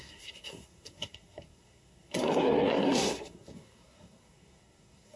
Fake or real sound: fake